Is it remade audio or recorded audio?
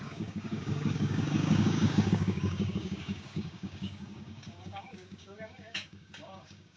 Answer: remade